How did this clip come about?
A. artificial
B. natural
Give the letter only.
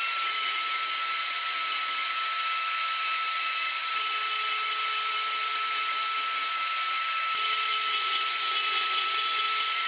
B